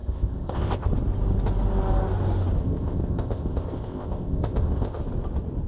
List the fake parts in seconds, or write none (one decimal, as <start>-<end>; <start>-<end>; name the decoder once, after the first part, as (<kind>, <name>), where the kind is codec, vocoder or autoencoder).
0.0-0.9 (codec, ZipCodec); 2.6-5.0